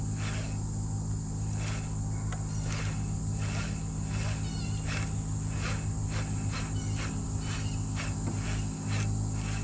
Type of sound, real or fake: real